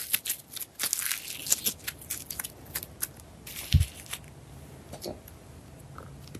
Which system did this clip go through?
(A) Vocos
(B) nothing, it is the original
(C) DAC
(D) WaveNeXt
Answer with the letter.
B